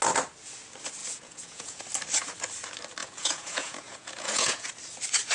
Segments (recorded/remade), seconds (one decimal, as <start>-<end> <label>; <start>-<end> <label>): 0.0-1.0 recorded; 1.0-1.8 remade; 1.8-3.0 recorded; 3.0-4.7 remade; 4.7-5.3 recorded